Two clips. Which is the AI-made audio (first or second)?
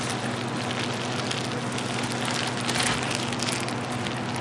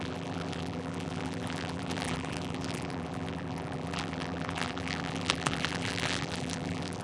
second